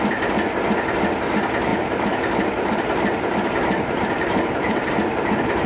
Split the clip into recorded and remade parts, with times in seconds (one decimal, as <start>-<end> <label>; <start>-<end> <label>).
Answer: 0.0-1.7 recorded; 1.7-4.9 remade; 4.9-5.7 recorded

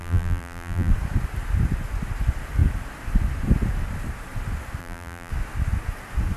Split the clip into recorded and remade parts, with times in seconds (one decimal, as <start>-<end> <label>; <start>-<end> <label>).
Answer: 0.0-0.9 remade; 0.9-4.8 recorded; 4.8-5.3 remade; 5.3-6.4 recorded

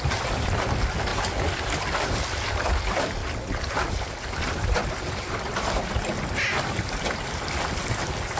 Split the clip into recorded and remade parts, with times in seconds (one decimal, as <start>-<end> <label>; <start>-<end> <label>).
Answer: 0.0-8.4 recorded